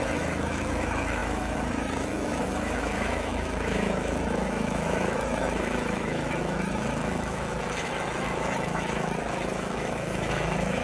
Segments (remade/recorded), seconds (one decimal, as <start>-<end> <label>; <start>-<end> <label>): 0.0-10.8 remade